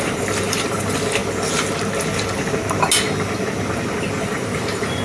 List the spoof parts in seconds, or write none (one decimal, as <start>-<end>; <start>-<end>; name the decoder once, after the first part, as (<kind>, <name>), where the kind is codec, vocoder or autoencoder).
0.0-1.2 (vocoder, BigVGAN v2); 4.2-5.0